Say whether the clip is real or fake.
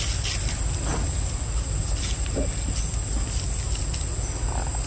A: real